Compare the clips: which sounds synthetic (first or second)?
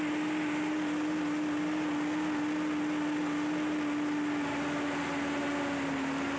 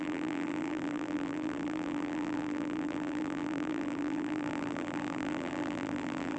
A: second